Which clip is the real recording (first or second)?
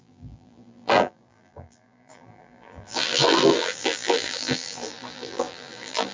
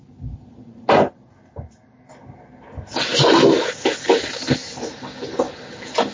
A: second